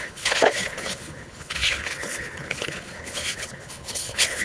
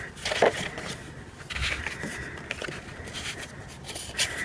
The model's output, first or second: first